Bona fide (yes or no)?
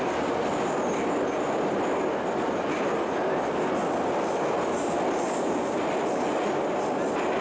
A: yes